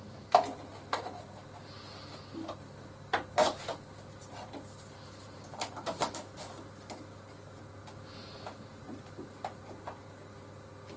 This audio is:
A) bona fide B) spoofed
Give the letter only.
A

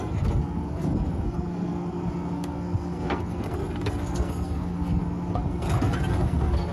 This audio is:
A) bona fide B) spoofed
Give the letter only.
B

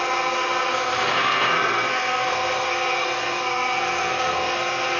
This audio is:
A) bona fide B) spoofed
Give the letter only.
B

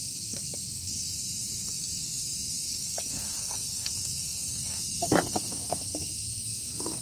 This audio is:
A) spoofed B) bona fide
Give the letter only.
A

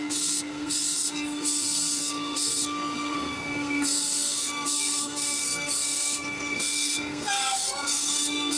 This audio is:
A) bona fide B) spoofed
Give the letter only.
B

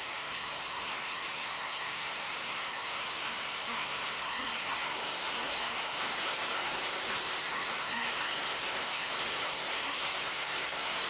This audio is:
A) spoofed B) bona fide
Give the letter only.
A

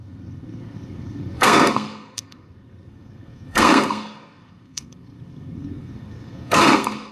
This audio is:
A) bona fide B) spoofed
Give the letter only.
B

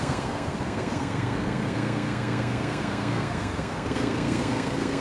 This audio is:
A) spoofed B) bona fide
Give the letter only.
A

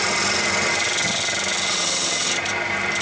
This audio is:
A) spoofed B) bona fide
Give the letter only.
B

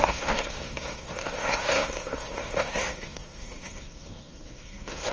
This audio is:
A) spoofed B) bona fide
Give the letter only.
A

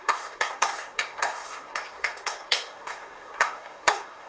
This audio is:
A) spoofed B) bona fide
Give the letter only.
A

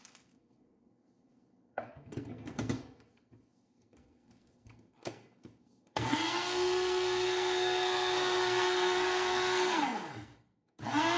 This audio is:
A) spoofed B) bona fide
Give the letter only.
A